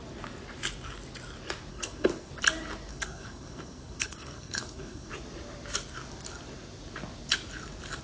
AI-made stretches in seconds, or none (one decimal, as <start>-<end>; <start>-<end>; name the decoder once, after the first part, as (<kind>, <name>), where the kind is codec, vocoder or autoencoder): 1.7-2.3 (codec, SNAC); 2.9-5.1